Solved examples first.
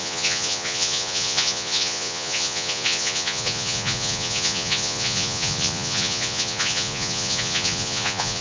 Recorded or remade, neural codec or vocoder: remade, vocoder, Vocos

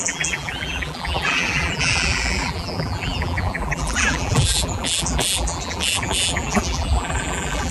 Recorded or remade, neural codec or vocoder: remade, vocoder, BigVGAN v2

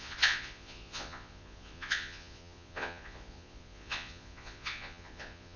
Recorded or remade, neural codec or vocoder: remade, vocoder, Vocos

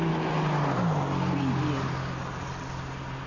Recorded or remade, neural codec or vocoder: recorded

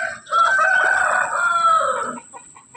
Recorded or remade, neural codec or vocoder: recorded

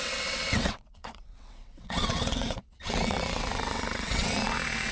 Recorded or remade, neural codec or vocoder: remade, vocoder, WaveNeXt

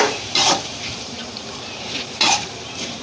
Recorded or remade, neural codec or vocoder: remade, vocoder, BigVGAN v2